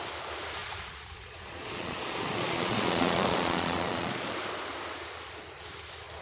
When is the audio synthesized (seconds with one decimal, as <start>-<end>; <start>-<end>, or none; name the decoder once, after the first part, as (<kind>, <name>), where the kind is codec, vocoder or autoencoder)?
0.6-4.3 (vocoder, Vocos)